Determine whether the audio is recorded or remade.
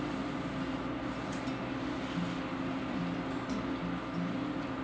recorded